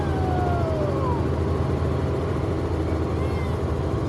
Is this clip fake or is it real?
real